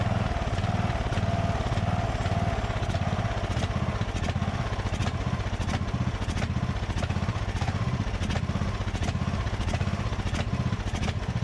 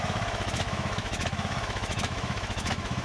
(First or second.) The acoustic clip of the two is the first